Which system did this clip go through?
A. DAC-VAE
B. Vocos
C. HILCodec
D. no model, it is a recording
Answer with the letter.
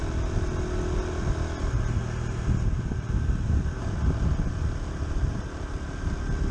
D